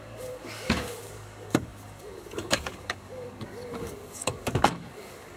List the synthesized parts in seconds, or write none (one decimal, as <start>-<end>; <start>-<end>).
0.0-5.4